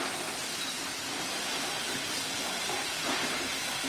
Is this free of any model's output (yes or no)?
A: yes